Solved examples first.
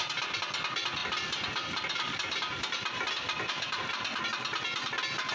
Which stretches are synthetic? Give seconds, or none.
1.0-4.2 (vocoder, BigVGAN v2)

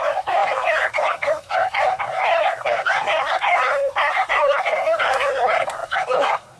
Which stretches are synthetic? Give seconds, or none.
0.0-6.6 (codec, SNAC)

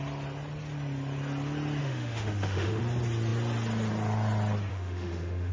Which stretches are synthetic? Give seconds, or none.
1.8-2.8 (autoencoder, DAC-VAE); 4.7-5.5

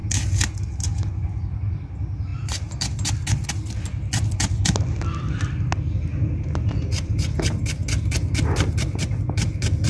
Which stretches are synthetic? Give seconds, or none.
none

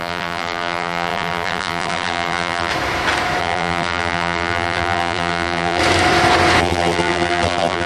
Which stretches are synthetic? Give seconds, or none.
0.0-2.7 (vocoder, BigVGAN v2); 3.4-5.8; 6.6-7.9

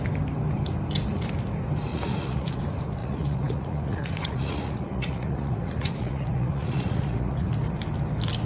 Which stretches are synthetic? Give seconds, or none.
1.9-2.6 (vocoder, Vocos); 3.0-7.5

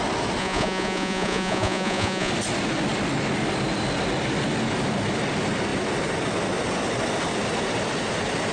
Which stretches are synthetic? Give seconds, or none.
0.4-2.3 (vocoder, Vocos)